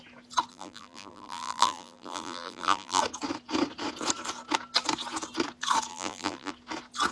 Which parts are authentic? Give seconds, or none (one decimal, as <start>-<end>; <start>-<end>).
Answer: 0.0-0.5; 3.0-5.9; 6.5-7.1